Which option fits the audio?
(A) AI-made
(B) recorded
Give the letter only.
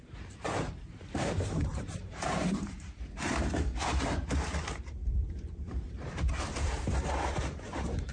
A